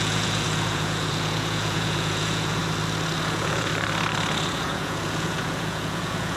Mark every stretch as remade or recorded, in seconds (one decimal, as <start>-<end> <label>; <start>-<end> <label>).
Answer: 0.0-2.6 remade; 2.6-3.2 recorded; 3.2-3.7 remade; 3.7-4.5 recorded; 4.5-6.4 remade